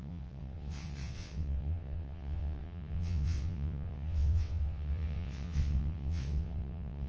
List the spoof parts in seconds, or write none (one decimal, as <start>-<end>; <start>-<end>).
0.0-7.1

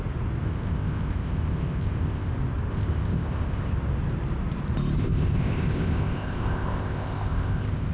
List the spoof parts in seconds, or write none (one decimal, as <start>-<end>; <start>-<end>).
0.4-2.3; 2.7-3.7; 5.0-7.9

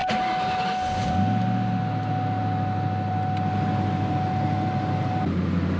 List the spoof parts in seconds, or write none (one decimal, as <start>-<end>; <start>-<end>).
none